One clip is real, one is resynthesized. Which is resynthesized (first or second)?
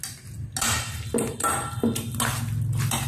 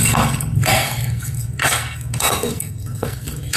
second